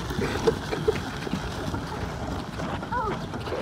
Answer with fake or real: real